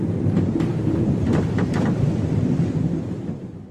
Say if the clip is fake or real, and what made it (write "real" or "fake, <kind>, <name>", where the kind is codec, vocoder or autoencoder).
real